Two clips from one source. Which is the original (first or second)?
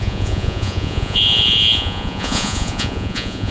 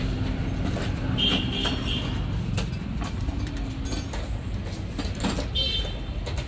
second